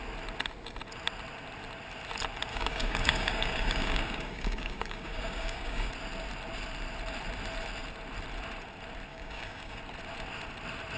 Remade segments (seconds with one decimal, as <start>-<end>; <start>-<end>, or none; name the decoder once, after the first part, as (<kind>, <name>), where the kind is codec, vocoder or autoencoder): 2.5-5.9 (codec, DAC); 9.1-9.8